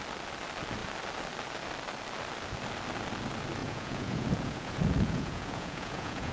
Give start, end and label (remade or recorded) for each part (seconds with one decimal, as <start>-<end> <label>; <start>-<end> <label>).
0.0-3.6 recorded; 3.6-6.3 remade